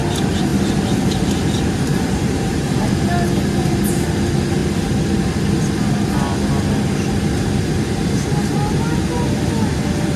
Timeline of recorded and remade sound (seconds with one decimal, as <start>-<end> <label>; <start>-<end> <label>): 0.0-0.5 recorded; 0.5-1.1 remade; 1.1-1.9 recorded; 1.9-3.1 remade; 3.1-10.2 recorded